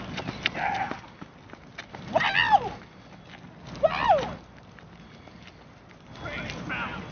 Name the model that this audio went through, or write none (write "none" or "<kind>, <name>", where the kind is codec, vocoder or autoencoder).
none